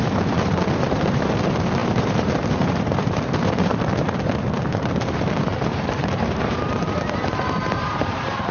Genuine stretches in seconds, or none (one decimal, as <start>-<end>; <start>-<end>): none

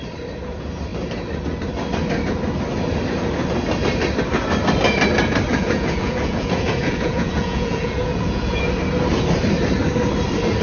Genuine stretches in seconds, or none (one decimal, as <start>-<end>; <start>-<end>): 0.0-5.5; 8.6-10.6